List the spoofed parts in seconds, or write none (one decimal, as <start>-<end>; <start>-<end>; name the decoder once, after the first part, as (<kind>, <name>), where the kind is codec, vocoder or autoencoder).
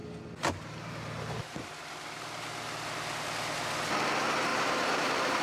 4.5-5.4 (vocoder, BigVGAN v2)